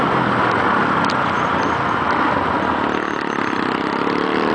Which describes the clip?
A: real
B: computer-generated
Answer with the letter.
A